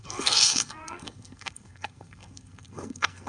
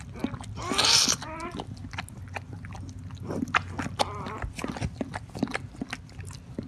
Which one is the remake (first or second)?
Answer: first